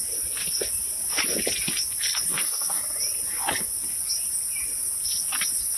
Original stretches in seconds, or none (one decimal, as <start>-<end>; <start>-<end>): 0.0-2.3; 2.8-5.8